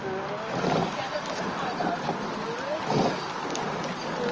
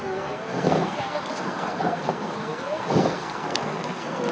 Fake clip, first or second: second